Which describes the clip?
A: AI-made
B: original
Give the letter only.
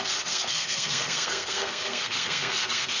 A